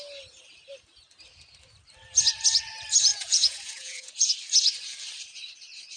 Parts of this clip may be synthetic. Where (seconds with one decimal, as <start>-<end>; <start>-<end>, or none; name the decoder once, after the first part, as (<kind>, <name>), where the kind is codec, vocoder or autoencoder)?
3.1-4.3 (vocoder, Vocos)